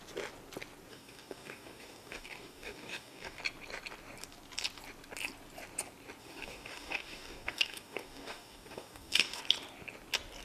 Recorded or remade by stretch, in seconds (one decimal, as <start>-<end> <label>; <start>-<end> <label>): 0.0-0.9 recorded; 0.9-3.4 remade; 3.4-6.2 recorded; 6.2-9.4 remade; 9.4-10.4 recorded